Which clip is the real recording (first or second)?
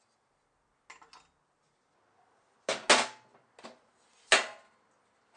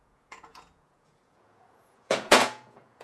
first